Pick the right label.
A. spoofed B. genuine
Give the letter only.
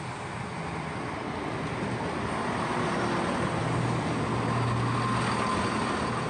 B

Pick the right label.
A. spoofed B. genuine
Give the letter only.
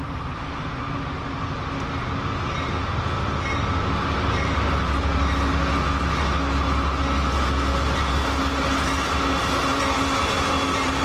B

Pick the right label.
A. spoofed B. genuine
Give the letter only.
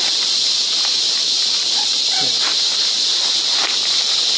B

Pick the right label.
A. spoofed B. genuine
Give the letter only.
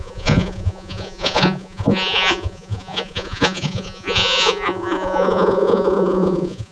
A